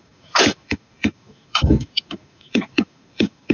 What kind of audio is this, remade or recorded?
remade